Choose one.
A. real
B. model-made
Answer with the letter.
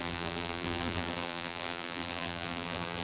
B